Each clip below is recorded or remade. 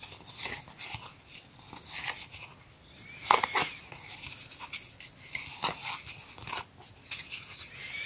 recorded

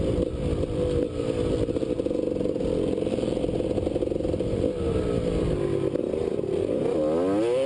recorded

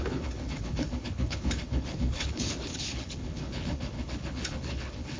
remade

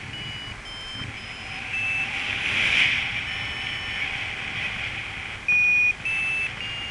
recorded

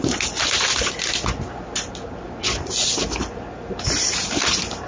recorded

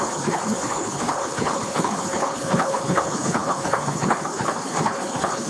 remade